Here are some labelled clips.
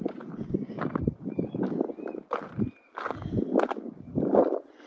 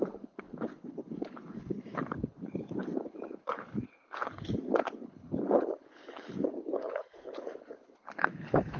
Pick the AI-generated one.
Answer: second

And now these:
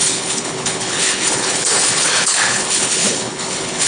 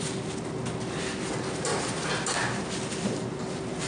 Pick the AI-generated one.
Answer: first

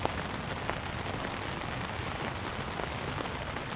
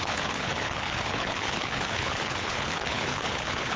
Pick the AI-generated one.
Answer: second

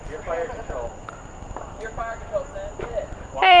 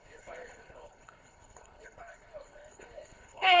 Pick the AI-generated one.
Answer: second